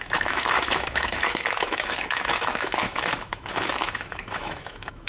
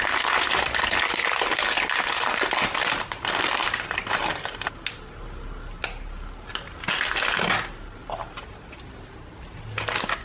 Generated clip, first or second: first